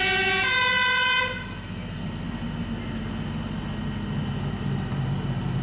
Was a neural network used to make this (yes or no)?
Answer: no